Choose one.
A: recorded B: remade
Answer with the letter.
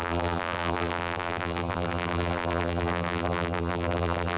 B